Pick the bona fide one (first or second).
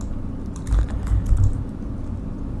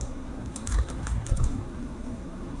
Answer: first